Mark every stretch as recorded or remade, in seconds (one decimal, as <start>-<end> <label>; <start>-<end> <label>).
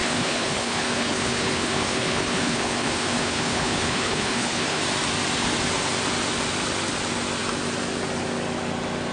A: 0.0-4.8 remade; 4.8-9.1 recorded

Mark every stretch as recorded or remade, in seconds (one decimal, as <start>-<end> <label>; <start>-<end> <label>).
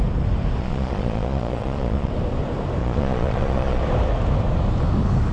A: 0.0-0.6 recorded; 0.6-2.1 remade; 2.1-2.8 recorded; 2.8-3.8 remade; 3.8-5.3 recorded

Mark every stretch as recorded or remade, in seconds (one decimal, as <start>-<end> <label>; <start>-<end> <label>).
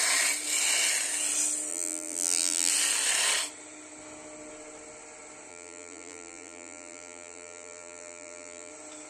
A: 0.0-1.7 recorded; 1.7-2.7 remade; 2.7-5.5 recorded; 5.5-8.7 remade; 8.7-9.1 recorded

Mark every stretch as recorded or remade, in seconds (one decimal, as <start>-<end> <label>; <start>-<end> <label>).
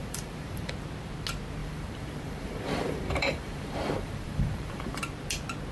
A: 0.0-0.7 remade; 0.7-1.6 recorded; 1.6-5.0 remade; 5.0-5.7 recorded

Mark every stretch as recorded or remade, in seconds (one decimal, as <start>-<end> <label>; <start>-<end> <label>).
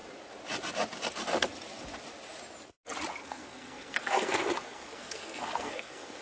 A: 0.0-3.2 recorded; 3.2-6.2 remade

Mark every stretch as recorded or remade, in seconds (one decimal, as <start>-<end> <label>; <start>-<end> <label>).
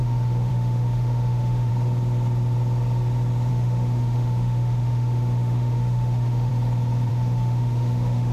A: 0.0-1.7 remade; 1.7-3.5 recorded; 3.5-6.5 remade; 6.5-7.1 recorded; 7.1-8.3 remade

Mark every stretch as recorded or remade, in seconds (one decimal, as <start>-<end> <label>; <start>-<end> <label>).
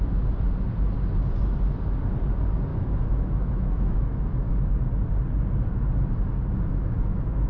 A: 0.0-2.7 recorded; 2.7-4.7 remade; 4.7-6.8 recorded; 6.8-7.5 remade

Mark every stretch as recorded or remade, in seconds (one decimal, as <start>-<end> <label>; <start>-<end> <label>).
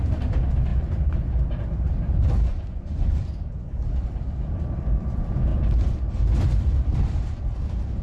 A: 0.0-0.7 recorded; 0.7-1.3 remade; 1.3-2.5 recorded; 2.5-3.2 remade; 3.2-8.0 recorded